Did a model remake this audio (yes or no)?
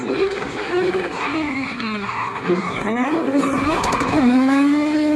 yes